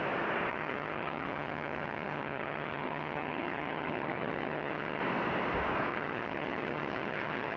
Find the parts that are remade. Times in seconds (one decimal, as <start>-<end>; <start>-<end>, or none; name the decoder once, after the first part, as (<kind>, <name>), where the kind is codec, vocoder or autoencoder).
0.5-5.0 (vocoder, HiFi-GAN); 5.9-7.6